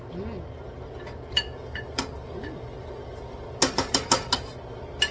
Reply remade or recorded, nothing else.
recorded